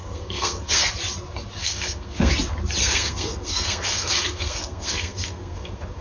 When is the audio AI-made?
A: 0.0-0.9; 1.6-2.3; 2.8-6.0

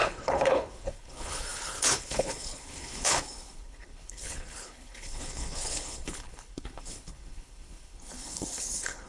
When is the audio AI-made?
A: 0.0-9.1

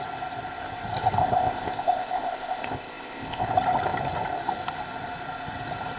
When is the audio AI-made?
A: 1.2-3.5

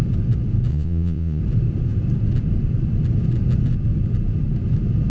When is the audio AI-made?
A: 0.7-1.4

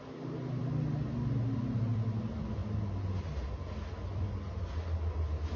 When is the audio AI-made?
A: none